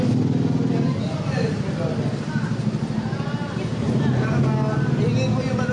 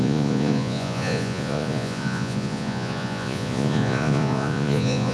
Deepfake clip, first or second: second